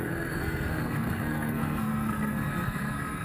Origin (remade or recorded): remade